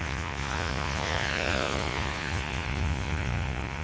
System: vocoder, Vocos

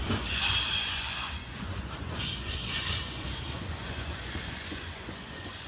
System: vocoder, Vocos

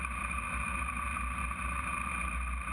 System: none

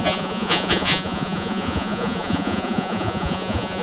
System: vocoder, Vocos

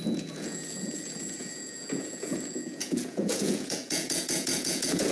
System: vocoder, Vocos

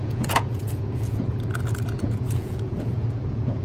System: vocoder, Vocos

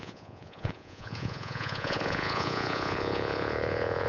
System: vocoder, Vocos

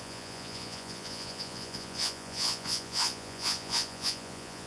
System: vocoder, Vocos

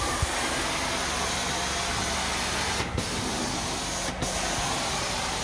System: none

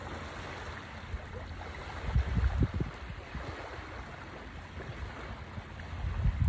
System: none